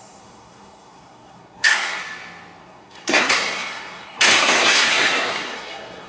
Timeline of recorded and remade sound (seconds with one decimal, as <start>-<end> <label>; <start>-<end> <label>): 0.0-2.0 remade; 2.0-2.6 recorded; 2.6-6.1 remade